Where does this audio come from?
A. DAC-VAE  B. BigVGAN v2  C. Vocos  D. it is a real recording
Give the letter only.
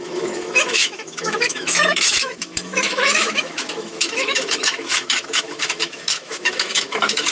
A